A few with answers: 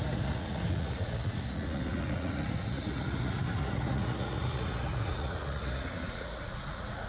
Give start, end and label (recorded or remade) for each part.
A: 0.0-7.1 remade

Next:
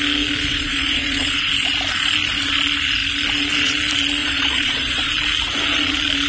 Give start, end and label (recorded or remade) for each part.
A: 0.0-0.5 recorded; 0.5-1.5 remade; 1.5-4.2 recorded; 4.2-5.1 remade; 5.1-6.3 recorded

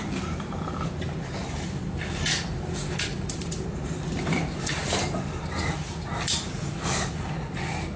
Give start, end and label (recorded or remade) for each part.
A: 0.0-8.0 recorded

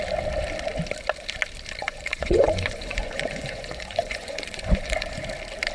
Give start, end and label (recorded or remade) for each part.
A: 0.0-1.8 recorded; 1.8-5.2 remade; 5.2-5.7 recorded